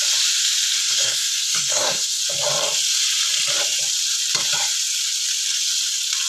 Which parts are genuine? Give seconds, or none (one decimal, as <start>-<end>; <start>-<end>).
0.0-0.8; 2.2-6.3